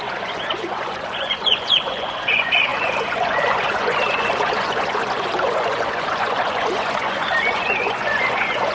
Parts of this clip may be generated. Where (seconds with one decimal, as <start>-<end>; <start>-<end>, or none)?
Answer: 0.0-8.7